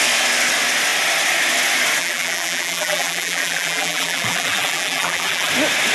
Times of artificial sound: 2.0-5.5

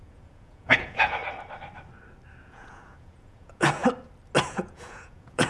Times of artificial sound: 0.0-1.2; 2.4-3.8; 4.4-5.5

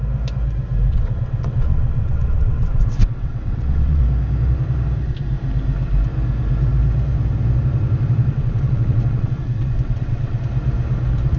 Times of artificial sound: 0.9-4.0; 8.3-10.4